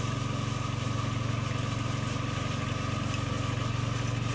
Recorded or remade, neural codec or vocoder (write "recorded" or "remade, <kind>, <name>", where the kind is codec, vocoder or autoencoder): recorded